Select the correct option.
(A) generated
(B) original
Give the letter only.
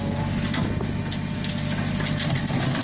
B